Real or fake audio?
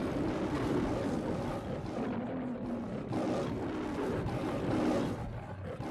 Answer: real